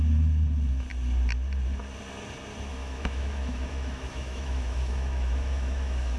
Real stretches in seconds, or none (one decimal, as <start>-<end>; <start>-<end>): 0.0-2.7